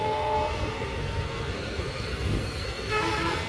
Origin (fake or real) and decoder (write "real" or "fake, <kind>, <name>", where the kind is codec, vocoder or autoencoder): fake, codec, SNAC